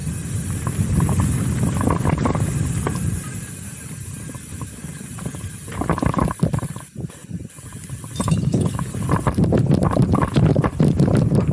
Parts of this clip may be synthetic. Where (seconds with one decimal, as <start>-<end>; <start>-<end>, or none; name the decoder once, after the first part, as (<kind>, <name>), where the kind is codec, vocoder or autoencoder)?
none